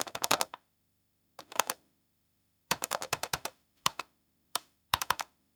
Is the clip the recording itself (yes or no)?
no